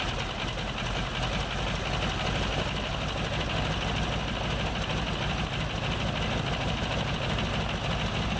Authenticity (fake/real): real